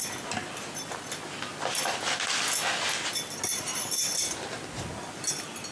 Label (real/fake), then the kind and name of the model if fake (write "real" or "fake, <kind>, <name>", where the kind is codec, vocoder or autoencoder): real